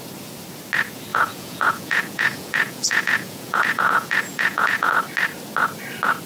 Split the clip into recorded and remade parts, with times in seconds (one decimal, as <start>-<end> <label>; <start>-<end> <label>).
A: 0.0-1.1 recorded; 1.1-4.9 remade; 4.9-6.3 recorded